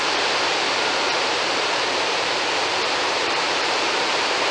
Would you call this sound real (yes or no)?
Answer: no